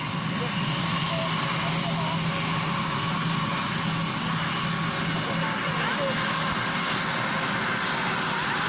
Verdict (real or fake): real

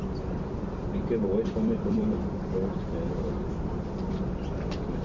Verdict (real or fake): fake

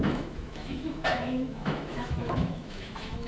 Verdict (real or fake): fake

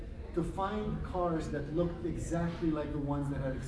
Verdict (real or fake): real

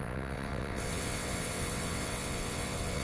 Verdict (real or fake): fake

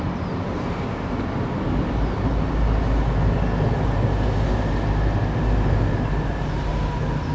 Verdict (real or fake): real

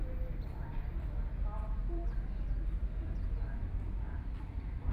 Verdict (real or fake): real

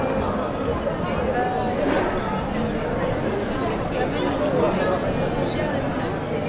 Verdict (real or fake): real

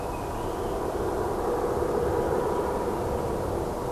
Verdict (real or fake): real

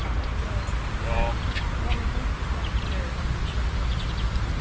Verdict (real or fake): real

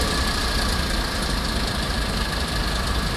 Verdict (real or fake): fake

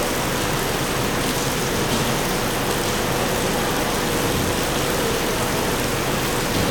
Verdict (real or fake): real